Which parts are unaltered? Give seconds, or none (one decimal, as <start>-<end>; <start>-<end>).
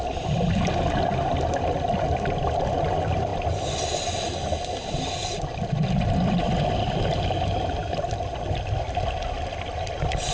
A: 0.0-10.3